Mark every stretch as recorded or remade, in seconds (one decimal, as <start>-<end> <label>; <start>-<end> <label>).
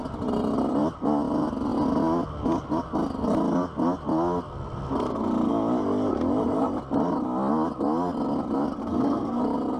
0.0-8.8 recorded; 8.8-9.4 remade; 9.4-9.8 recorded